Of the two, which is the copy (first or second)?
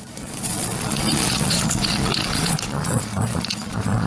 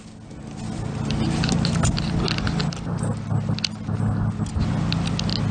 first